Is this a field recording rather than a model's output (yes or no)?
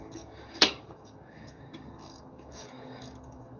no